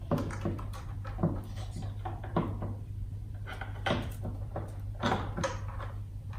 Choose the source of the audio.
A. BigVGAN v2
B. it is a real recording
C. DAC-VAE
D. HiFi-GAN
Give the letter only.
A